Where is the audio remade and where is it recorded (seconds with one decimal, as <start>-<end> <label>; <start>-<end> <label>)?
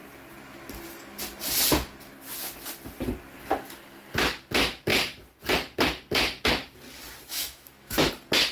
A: 0.0-7.3 recorded; 7.3-8.1 remade; 8.1-8.5 recorded